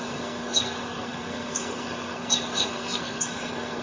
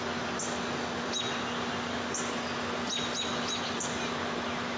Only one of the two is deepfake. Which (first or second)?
first